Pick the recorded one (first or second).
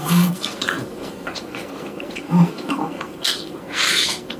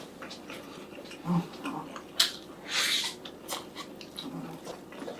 second